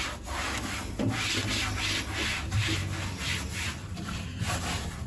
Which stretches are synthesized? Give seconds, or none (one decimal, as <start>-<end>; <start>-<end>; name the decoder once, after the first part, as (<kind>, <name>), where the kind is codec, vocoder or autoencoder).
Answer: none